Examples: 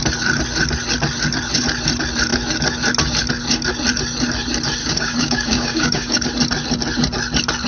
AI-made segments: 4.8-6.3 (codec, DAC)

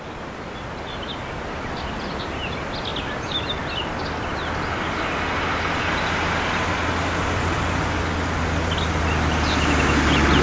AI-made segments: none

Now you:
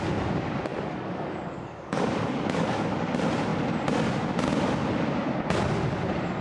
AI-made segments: 0.7-3.1 (codec, DAC)

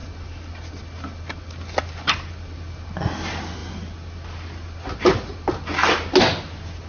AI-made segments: none

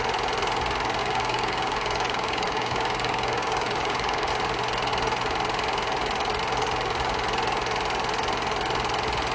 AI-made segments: 1.0-4.3 (codec, DAC)